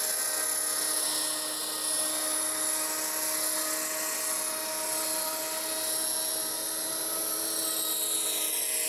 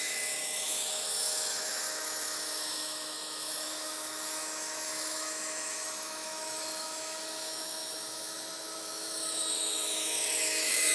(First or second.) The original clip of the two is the first